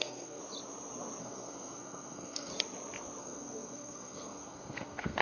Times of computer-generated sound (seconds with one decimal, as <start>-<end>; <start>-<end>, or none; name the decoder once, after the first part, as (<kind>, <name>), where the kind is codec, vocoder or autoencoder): 0.0-0.4 (codec, SNAC); 1.2-2.5; 3.2-5.2